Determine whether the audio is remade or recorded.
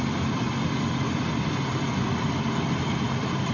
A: remade